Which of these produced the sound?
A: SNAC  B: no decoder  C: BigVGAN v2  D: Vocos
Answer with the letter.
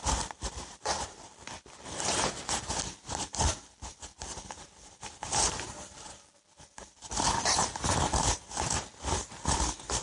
C